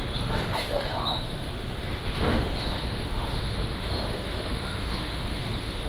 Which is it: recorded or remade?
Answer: remade